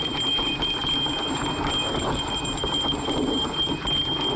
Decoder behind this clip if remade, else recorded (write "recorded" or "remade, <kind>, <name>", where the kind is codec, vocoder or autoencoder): remade, vocoder, BigVGAN v2